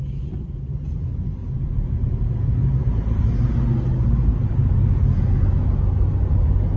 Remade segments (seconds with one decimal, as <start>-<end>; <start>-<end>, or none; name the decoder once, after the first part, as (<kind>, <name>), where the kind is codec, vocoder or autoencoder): 1.4-3.4 (vocoder, Vocos); 4.6-6.0